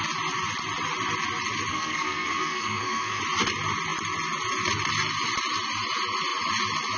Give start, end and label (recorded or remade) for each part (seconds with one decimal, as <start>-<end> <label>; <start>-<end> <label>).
0.0-1.7 recorded; 1.7-3.2 remade; 3.2-7.0 recorded